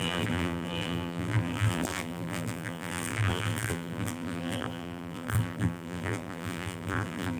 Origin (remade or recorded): remade